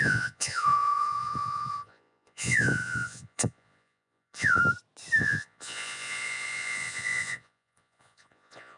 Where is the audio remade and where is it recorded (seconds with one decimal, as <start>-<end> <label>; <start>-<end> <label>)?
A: 0.0-4.6 remade; 4.6-5.2 recorded; 5.2-8.8 remade